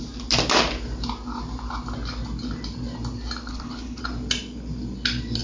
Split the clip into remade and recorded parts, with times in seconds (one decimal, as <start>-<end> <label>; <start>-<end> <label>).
0.0-3.5 recorded; 3.5-4.0 remade; 4.0-5.4 recorded